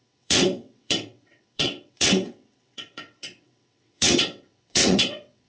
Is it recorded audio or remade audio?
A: remade